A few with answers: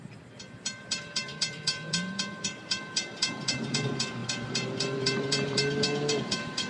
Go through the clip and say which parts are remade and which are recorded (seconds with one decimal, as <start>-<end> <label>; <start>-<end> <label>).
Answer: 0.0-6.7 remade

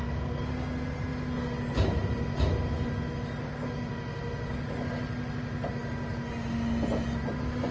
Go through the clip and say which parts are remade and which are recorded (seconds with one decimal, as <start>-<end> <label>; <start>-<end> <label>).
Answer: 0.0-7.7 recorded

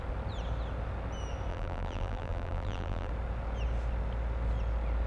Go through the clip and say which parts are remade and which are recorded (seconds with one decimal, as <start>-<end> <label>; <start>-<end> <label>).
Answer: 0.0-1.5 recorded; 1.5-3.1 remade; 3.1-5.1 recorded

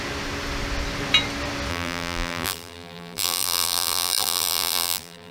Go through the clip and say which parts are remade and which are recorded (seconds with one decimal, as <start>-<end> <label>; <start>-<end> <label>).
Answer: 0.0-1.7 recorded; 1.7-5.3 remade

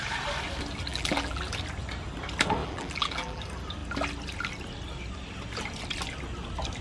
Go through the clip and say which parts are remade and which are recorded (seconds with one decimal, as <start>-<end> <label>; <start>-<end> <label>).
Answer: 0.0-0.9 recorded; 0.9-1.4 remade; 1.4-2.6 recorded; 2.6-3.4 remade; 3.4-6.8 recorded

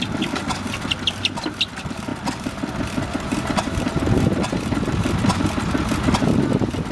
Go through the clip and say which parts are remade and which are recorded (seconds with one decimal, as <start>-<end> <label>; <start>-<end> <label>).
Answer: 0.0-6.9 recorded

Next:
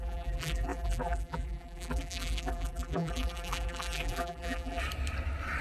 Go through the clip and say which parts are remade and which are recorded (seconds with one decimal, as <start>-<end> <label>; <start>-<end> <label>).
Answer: 0.0-4.8 remade; 4.8-5.6 recorded

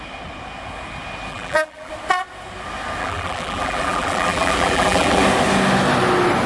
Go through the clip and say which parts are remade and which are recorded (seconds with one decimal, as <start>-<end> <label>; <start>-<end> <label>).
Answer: 0.0-1.3 recorded; 1.3-1.9 remade; 1.9-3.0 recorded; 3.0-5.2 remade; 5.2-6.5 recorded